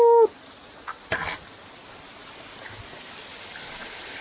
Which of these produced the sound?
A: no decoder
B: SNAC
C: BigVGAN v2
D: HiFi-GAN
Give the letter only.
A